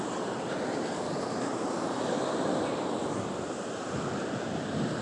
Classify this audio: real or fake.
real